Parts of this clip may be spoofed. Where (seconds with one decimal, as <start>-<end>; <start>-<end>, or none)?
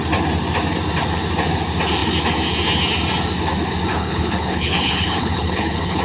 3.9-6.0